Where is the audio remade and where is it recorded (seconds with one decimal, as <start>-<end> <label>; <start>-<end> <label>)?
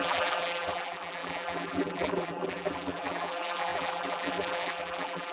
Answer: 0.0-5.3 remade